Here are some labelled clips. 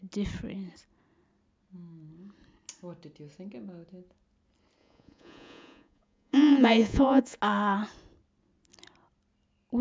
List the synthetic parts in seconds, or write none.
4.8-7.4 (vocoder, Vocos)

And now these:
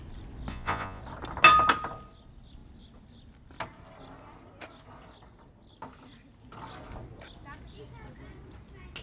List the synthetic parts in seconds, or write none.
0.5-1.0 (vocoder, Vocos)

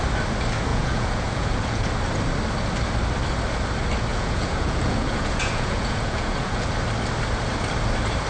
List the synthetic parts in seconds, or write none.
0.7-1.9 (vocoder, Vocos); 4.1-6.7

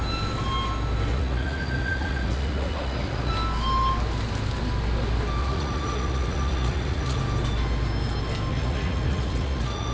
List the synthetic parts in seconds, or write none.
1.1-3.3 (vocoder, Vocos); 5.4-7.2; 8.5-9.9

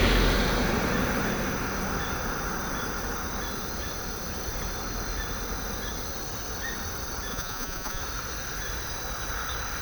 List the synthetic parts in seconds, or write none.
7.3-8.0 (vocoder, Vocos)

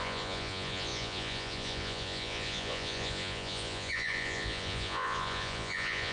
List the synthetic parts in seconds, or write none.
0.0-6.1 (vocoder, Vocos)

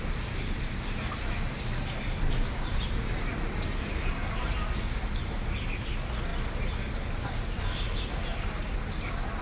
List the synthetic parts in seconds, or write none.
none

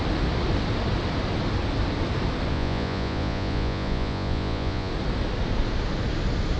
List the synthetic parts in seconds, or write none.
2.5-4.9 (vocoder, Vocos)